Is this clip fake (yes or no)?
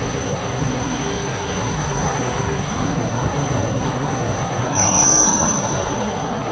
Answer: yes